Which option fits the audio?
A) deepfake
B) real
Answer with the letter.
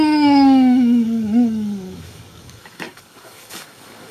A